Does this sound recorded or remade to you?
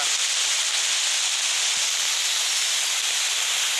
recorded